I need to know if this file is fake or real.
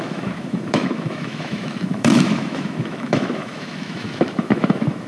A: fake